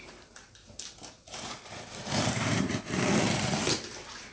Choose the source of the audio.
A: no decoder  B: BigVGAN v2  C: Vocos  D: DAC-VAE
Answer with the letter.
B